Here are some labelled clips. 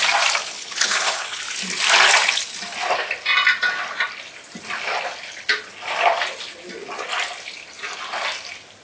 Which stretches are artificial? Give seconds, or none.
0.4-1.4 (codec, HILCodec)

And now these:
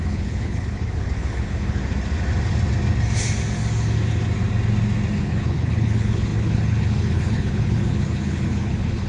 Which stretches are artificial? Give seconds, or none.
0.0-1.8 (codec, HILCodec); 5.2-9.1

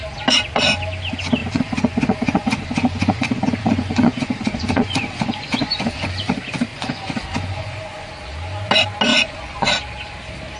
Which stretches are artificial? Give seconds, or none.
1.4-6.1 (vocoder, Vocos); 6.7-8.1; 9.1-9.7